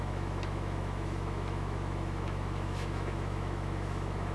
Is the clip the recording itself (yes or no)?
no